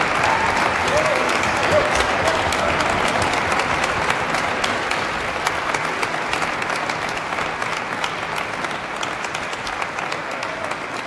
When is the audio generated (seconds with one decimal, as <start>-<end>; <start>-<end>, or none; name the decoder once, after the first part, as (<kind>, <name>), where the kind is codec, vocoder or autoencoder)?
0.8-2.5 (codec, DAC)